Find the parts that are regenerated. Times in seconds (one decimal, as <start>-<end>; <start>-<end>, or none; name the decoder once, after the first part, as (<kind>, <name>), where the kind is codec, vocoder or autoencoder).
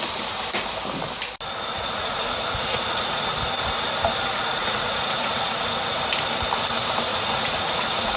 1.8-3.3 (vocoder, Vocos); 4.5-5.5; 7.1-8.2